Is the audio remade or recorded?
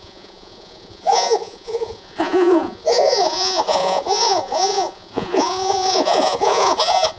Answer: remade